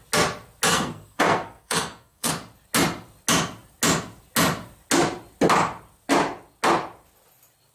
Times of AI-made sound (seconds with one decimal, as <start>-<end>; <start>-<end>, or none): 0.7-2.3